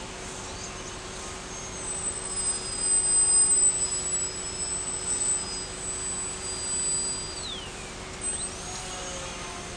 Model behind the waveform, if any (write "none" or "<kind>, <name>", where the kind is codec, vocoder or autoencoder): none